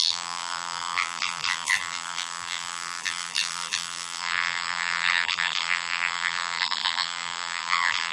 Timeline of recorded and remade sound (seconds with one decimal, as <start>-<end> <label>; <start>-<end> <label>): 0.0-8.1 remade